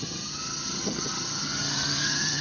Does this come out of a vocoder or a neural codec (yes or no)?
yes